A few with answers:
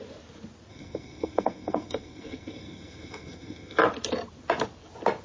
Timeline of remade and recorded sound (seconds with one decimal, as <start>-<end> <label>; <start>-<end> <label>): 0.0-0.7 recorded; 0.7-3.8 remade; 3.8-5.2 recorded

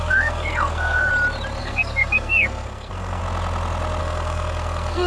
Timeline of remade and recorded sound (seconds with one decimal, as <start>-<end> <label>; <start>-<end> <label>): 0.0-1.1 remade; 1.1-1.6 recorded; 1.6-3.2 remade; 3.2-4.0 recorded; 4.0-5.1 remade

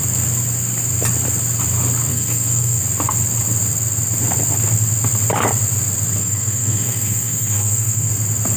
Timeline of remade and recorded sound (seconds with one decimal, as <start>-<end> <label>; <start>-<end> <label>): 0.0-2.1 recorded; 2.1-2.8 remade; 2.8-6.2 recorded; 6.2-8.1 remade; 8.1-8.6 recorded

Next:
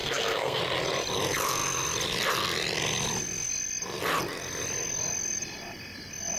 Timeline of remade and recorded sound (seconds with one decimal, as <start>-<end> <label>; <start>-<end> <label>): 0.0-0.6 remade; 0.6-6.4 recorded

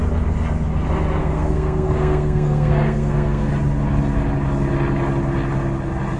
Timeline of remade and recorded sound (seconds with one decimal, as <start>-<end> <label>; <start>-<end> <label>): 0.0-1.2 recorded; 1.2-3.5 remade; 3.5-6.2 recorded